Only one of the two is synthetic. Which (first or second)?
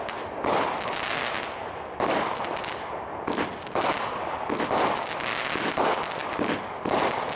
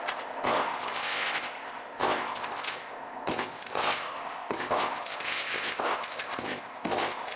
second